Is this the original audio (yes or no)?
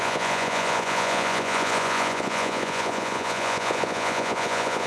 no